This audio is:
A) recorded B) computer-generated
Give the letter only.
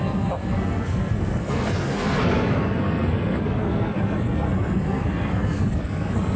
B